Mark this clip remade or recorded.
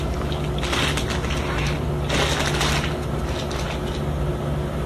recorded